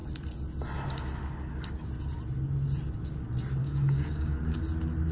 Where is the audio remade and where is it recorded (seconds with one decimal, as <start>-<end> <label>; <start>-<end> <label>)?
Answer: 0.0-3.6 recorded; 3.6-4.6 remade; 4.6-5.1 recorded

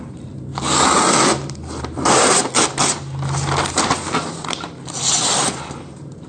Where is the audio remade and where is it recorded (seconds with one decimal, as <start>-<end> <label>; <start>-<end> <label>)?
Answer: 0.0-0.5 remade; 0.5-1.8 recorded; 1.8-2.4 remade; 2.4-5.8 recorded; 5.8-6.3 remade